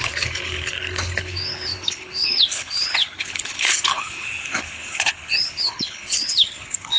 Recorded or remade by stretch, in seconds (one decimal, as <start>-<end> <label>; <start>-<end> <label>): 0.0-7.0 remade

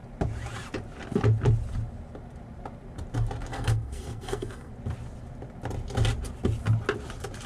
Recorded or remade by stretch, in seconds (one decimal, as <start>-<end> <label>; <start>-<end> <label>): 0.0-3.5 recorded; 3.5-4.7 remade; 4.7-7.5 recorded

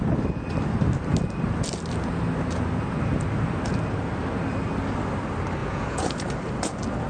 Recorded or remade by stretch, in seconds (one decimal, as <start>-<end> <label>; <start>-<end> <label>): 0.0-5.6 recorded; 5.6-6.3 remade; 6.3-7.1 recorded

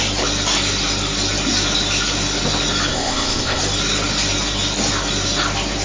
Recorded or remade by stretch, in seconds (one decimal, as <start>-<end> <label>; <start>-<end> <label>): 0.0-2.9 recorded; 2.9-3.6 remade; 3.6-5.8 recorded

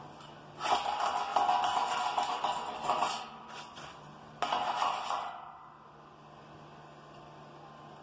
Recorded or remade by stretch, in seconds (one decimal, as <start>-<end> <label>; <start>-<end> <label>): 0.0-8.0 recorded

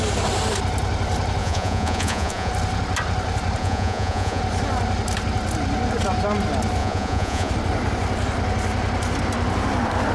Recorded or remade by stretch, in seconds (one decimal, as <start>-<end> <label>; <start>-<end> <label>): 0.0-1.4 recorded; 1.4-2.5 remade; 2.5-3.6 recorded; 3.6-4.4 remade; 4.4-6.8 recorded; 6.8-7.5 remade; 7.5-10.1 recorded